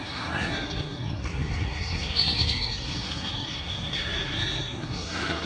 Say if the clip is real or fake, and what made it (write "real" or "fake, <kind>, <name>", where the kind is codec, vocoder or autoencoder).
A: fake, codec, SNAC